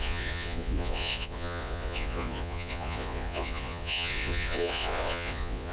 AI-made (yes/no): yes